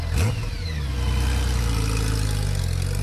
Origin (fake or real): real